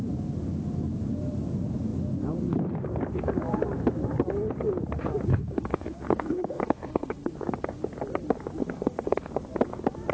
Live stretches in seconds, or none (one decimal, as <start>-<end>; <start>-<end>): 0.0-5.3; 7.3-8.6; 9.3-10.1